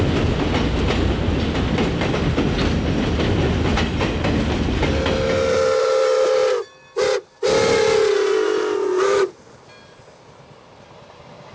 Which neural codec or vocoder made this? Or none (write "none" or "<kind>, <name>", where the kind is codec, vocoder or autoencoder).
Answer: none